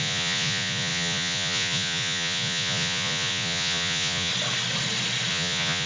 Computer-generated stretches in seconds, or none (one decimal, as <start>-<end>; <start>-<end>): 0.0-4.3; 5.3-5.9